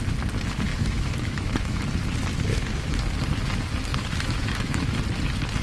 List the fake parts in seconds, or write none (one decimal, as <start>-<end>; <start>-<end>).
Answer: 0.7-1.8; 2.5-3.0; 3.9-5.0